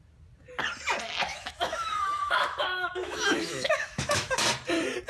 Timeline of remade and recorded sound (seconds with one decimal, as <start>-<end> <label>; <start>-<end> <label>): 0.0-1.3 recorded; 1.3-4.4 remade; 4.4-5.1 recorded